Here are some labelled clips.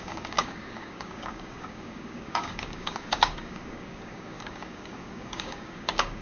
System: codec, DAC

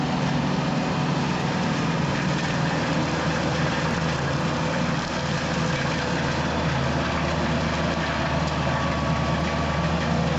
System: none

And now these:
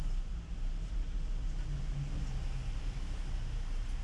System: none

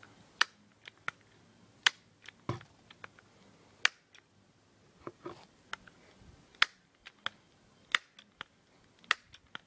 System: none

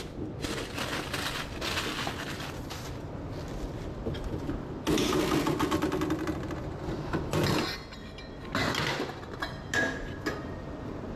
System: none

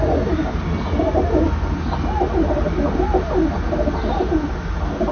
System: none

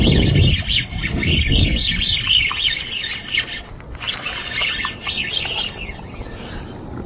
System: none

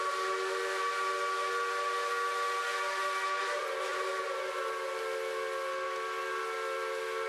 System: none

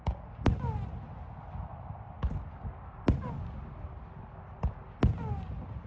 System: none